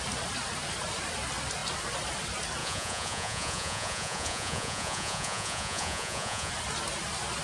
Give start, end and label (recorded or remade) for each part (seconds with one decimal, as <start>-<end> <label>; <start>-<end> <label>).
0.0-2.6 recorded; 2.6-6.5 remade; 6.5-7.4 recorded